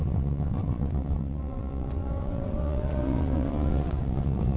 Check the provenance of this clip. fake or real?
fake